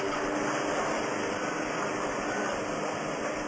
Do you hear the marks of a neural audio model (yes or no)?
no